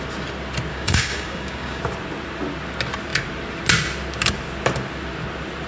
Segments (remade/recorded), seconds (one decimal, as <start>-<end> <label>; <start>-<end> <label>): 0.0-0.7 recorded; 0.7-1.8 remade; 1.8-5.7 recorded